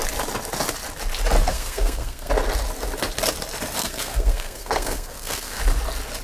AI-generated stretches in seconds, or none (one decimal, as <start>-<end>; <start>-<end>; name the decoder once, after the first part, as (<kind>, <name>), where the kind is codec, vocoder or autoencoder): 1.5-2.3 (codec, SNAC); 3.8-5.6